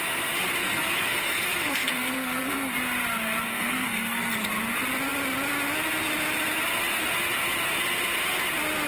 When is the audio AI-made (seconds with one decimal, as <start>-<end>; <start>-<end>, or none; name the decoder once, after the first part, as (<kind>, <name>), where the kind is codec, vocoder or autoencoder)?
0.6-2.7 (codec, SNAC); 3.5-4.5